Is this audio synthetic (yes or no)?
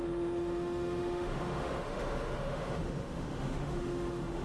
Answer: yes